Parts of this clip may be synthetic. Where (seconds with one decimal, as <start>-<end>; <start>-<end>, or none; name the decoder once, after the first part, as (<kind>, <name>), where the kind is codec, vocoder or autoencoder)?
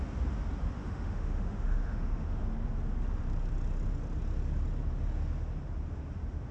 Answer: 0.8-2.4 (autoencoder, DAC-VAE)